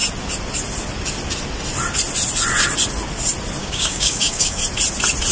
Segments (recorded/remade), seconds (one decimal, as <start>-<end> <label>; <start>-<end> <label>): 0.0-3.6 recorded; 3.6-4.6 remade; 4.6-5.3 recorded